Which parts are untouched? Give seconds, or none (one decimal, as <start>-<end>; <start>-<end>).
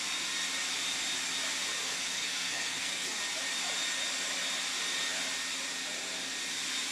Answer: 0.0-1.8; 3.2-6.9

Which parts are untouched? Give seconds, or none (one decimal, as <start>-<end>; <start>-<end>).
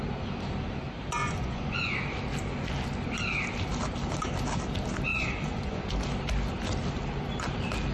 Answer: 0.0-1.2; 2.0-5.1; 5.8-7.9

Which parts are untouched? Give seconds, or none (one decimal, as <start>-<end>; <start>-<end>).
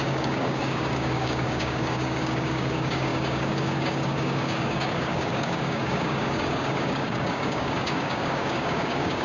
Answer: none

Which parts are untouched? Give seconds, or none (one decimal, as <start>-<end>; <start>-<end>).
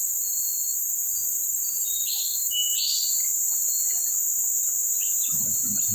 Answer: 0.0-5.9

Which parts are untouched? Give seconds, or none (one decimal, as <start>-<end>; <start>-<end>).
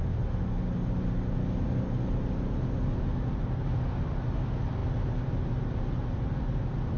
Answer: 0.0-7.0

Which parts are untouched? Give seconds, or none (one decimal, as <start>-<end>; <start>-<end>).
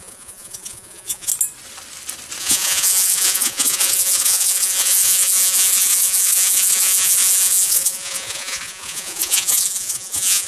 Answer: 1.3-2.4